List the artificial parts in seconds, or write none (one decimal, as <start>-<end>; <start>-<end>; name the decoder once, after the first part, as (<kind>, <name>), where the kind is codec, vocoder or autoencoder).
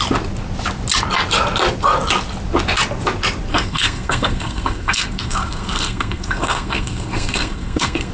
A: 3.5-8.1 (codec, SNAC)